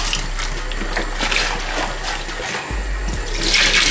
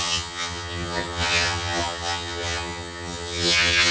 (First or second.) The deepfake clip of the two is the second